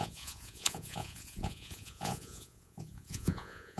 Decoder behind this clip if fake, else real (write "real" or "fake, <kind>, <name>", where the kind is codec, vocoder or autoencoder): fake, vocoder, Vocos